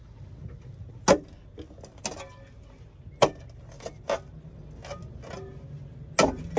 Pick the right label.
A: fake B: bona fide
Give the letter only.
B